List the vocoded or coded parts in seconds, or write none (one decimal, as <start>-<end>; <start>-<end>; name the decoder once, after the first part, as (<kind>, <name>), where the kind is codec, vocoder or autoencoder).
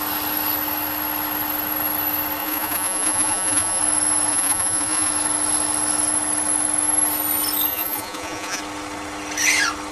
2.4-3.8 (vocoder, Vocos); 4.3-5.1; 7.7-8.6